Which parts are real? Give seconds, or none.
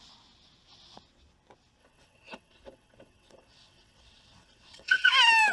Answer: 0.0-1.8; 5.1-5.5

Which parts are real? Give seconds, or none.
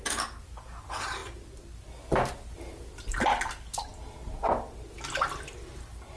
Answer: 0.0-6.2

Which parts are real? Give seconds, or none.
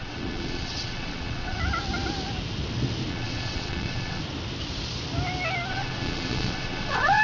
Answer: 1.6-3.1; 4.2-5.7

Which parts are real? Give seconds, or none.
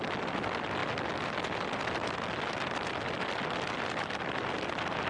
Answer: 0.0-5.1